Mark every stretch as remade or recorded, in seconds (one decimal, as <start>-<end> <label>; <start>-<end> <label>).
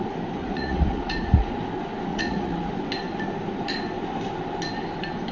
0.0-0.4 recorded; 0.4-1.5 remade; 1.5-2.1 recorded; 2.1-2.7 remade; 2.7-5.3 recorded